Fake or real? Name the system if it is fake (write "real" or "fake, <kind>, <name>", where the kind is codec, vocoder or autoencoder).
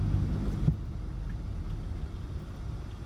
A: real